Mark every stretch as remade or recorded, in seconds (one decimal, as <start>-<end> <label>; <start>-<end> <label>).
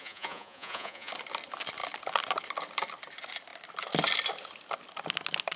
0.0-1.1 remade; 1.1-5.6 recorded